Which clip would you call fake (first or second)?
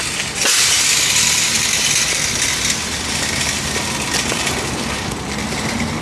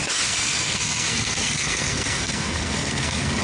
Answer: second